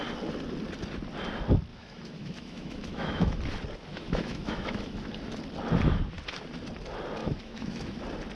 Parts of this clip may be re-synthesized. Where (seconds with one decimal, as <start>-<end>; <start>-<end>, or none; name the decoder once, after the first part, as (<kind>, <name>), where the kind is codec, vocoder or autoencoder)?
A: 1.7-3.4 (autoencoder, DAC-VAE); 3.9-5.1; 7.2-8.0